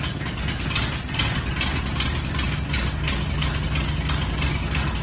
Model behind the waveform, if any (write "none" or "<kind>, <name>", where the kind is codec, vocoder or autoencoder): none